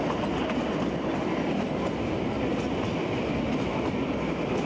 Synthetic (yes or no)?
no